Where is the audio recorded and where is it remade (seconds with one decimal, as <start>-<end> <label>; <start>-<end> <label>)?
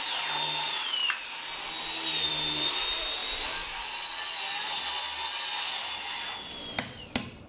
0.0-7.5 recorded